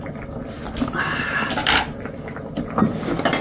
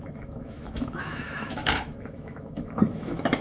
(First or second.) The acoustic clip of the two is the first